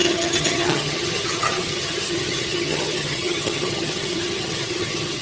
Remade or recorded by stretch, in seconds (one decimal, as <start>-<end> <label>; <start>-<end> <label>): 0.0-5.2 remade